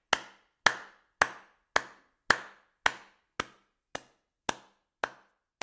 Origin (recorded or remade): recorded